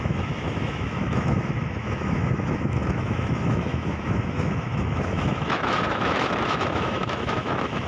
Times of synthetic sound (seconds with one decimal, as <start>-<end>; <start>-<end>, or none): 0.0-7.9